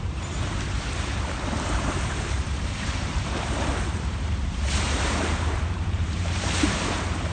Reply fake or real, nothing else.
fake